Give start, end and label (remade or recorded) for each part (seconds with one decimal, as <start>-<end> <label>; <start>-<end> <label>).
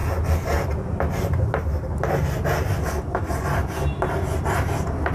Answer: 0.0-5.1 recorded